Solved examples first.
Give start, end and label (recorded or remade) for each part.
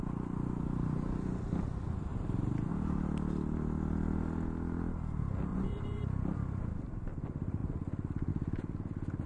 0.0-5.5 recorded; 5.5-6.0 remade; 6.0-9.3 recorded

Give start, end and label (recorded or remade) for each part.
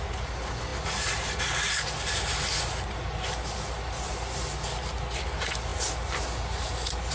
0.0-7.1 recorded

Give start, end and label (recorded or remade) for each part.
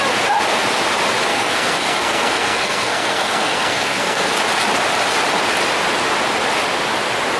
0.0-1.3 recorded; 1.3-4.3 remade; 4.3-7.4 recorded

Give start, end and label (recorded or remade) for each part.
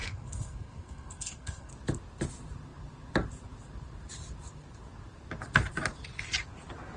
0.0-1.7 remade; 1.7-7.0 recorded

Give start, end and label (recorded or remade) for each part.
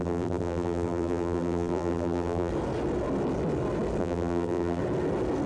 0.0-2.5 remade; 2.5-4.0 recorded; 4.0-4.8 remade; 4.8-5.5 recorded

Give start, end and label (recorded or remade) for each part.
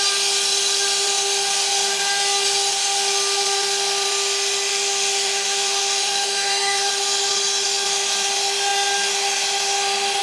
0.0-4.7 recorded; 4.7-6.9 remade; 6.9-10.2 recorded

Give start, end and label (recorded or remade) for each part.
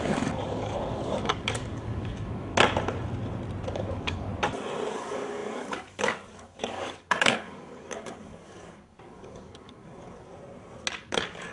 0.0-2.5 remade; 2.5-3.7 recorded; 3.7-4.3 remade; 4.3-4.9 recorded; 4.9-10.3 remade; 10.3-11.0 recorded; 11.0-11.5 remade